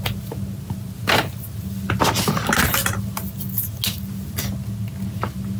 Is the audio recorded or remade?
recorded